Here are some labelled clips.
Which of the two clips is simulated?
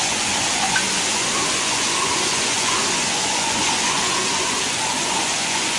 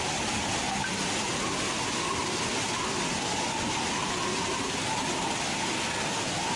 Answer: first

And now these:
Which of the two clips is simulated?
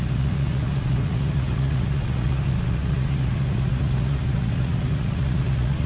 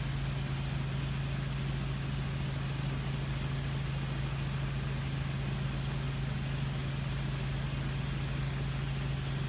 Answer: first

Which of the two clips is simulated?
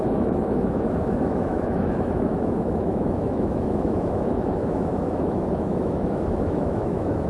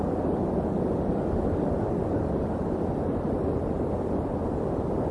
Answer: first